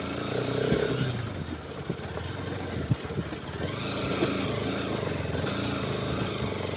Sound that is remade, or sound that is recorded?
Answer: recorded